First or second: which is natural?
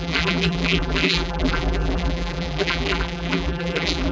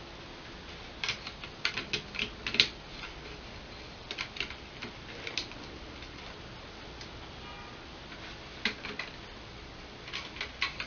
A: second